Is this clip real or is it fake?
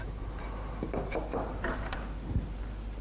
real